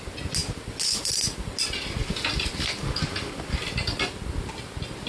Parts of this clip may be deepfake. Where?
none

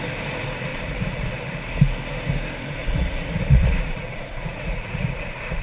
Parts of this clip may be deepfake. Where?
0.7-1.3 (vocoder, Vocos); 2.8-5.6

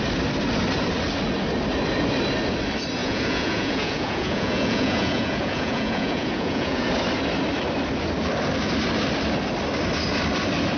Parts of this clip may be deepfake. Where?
3.0-6.9 (vocoder, Vocos)

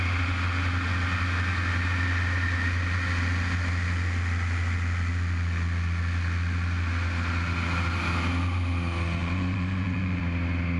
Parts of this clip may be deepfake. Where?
9.2-10.2 (vocoder, Vocos)

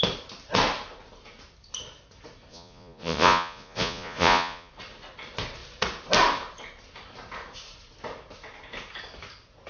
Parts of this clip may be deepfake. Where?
2.5-4.7 (vocoder, Vocos)

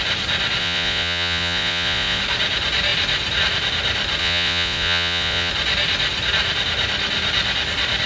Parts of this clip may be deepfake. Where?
0.6-2.2 (vocoder, Vocos); 4.2-5.5

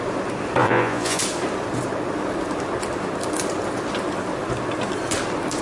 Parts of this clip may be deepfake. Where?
0.6-1.2 (vocoder, Vocos)

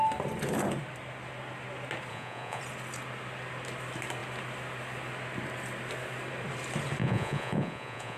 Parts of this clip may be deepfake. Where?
2.1-2.6 (vocoder, Vocos); 7.0-8.2